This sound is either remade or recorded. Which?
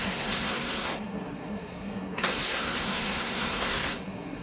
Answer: remade